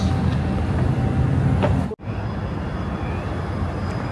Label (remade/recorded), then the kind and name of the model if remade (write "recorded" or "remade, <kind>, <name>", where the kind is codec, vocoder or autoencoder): recorded